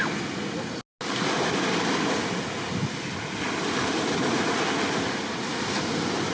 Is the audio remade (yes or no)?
no